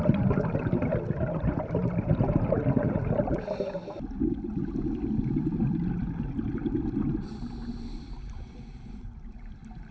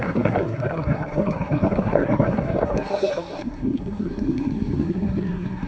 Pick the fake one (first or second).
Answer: second